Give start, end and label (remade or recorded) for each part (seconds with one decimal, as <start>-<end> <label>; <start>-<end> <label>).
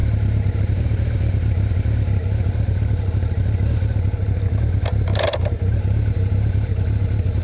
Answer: 0.0-1.7 remade; 1.7-4.9 recorded; 4.9-6.7 remade; 6.7-7.4 recorded